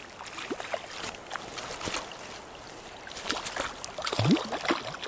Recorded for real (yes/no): yes